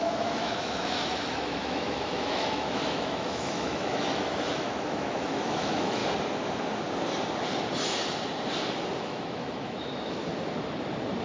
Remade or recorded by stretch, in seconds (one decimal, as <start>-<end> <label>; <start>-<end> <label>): 0.0-6.0 remade; 6.0-9.0 recorded; 9.0-10.2 remade; 10.2-11.2 recorded